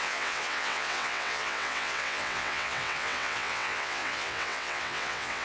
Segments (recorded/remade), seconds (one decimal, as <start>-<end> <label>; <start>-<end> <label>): 0.0-5.4 remade